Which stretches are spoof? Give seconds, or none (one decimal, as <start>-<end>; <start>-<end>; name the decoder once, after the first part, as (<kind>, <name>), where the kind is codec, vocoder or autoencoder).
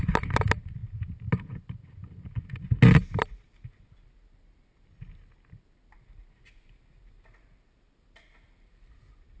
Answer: none